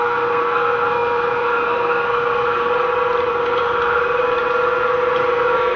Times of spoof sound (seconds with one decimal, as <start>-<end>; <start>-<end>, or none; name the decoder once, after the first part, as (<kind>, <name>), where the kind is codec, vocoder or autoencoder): 0.0-2.7 (codec, SNAC); 3.3-4.2; 5.3-5.8